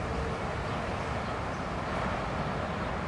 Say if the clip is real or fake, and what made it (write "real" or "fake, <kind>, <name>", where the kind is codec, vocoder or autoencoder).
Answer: real